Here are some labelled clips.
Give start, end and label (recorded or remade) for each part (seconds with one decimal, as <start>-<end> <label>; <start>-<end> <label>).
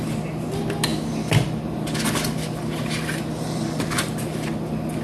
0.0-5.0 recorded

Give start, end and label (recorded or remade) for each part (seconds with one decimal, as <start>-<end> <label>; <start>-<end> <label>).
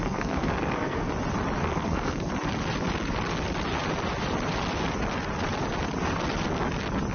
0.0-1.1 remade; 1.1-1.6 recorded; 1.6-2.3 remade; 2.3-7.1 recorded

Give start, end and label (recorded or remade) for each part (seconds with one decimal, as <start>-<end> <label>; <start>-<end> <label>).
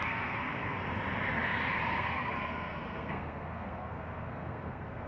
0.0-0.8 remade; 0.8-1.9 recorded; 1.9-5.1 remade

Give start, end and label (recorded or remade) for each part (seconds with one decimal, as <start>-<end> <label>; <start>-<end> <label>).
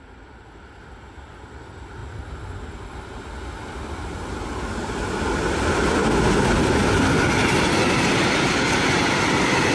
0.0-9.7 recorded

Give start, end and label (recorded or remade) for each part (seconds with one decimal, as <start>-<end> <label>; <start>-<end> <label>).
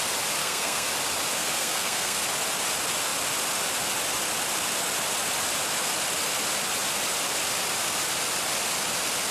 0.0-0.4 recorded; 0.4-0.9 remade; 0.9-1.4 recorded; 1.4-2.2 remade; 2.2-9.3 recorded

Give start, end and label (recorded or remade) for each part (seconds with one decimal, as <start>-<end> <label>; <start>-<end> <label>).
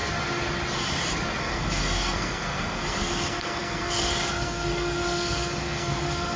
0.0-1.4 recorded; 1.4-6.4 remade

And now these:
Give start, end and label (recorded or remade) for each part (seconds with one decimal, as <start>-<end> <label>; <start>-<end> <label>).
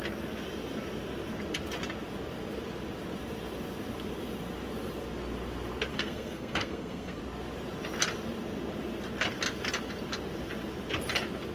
0.0-5.9 recorded; 5.9-7.2 remade; 7.2-11.5 recorded